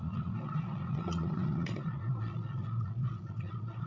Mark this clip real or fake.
fake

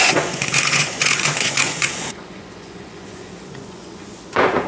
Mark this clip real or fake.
fake